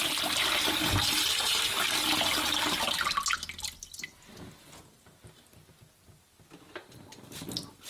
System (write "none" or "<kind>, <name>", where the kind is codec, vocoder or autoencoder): none